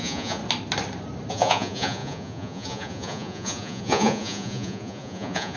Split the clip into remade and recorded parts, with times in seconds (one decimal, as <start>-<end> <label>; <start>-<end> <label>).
0.0-0.4 remade; 0.4-1.3 recorded; 1.3-5.6 remade